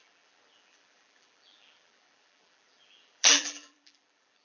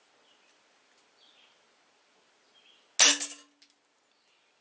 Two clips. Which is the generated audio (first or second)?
first